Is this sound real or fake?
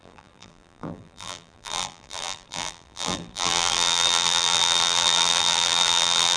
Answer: fake